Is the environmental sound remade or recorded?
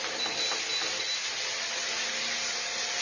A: recorded